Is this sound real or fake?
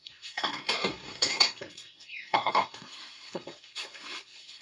fake